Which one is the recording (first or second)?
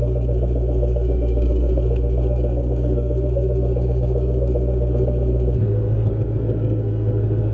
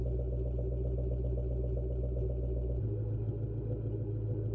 second